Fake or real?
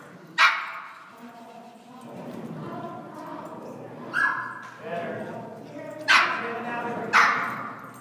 real